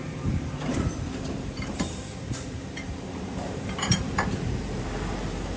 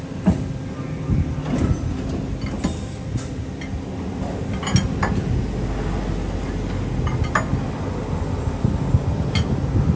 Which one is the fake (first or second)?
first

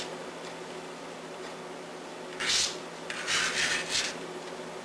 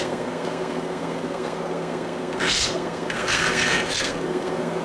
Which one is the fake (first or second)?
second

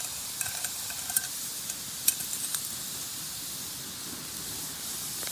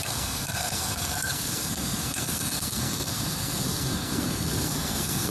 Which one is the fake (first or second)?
second